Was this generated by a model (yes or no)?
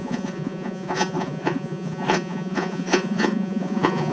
yes